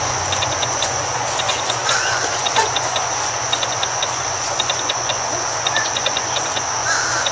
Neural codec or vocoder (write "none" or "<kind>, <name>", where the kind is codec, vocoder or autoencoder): vocoder, Vocos